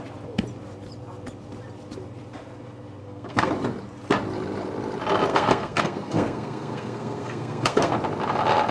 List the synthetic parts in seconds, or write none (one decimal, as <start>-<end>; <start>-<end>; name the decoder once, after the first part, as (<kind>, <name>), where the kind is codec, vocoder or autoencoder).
3.0-3.5 (codec, SNAC); 5.3-7.9